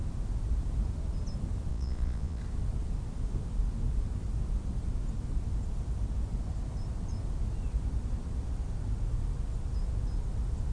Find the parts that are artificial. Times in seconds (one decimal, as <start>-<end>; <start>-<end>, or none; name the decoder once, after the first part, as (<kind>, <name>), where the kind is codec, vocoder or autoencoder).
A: 1.7-2.4 (vocoder, Vocos)